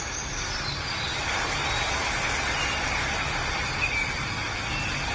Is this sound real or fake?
real